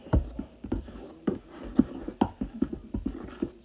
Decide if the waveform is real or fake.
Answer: real